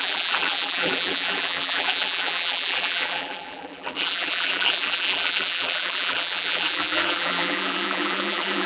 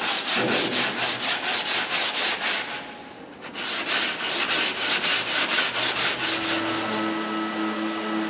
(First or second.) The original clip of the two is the second